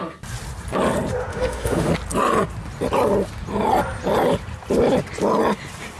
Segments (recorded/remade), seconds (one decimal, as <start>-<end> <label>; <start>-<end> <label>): 0.0-1.3 recorded; 1.3-1.9 remade; 1.9-6.0 recorded